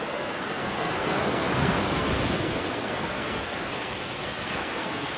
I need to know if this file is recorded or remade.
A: remade